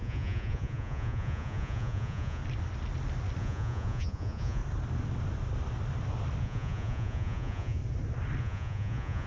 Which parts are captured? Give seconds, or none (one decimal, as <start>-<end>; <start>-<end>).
2.4-3.4; 4.6-6.4; 7.8-8.4